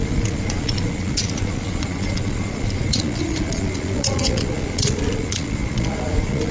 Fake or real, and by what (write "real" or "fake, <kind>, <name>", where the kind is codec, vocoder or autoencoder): fake, vocoder, Vocos